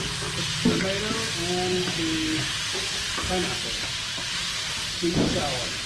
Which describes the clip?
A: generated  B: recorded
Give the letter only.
B